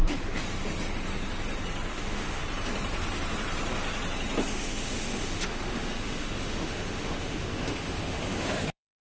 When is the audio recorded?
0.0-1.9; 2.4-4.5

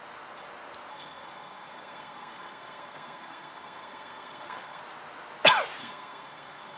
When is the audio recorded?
0.0-0.9; 4.8-5.8

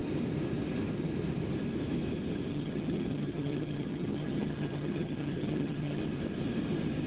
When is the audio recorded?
0.0-2.5; 6.0-7.1

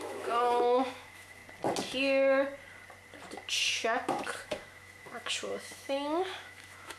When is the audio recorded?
1.4-3.7

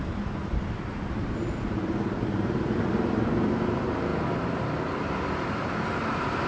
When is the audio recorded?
0.4-1.0

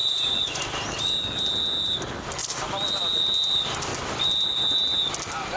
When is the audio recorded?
0.6-5.6